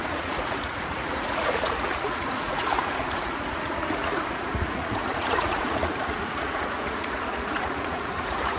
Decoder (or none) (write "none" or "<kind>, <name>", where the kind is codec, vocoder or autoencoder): vocoder, Vocos